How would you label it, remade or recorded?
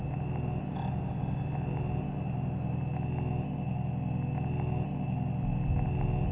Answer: recorded